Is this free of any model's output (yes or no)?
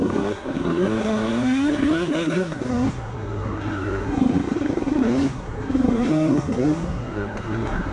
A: no